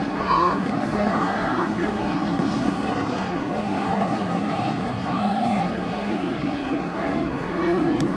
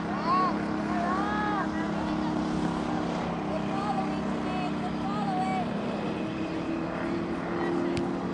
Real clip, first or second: second